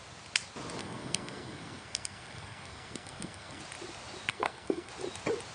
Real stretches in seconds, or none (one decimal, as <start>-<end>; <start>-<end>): 0.0-0.8; 3.6-4.3; 4.9-5.5